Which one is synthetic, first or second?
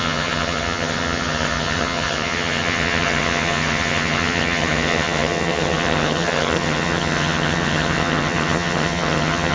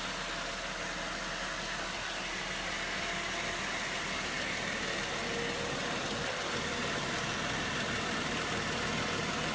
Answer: first